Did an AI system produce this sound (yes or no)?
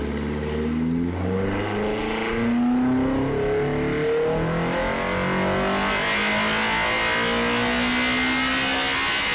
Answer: no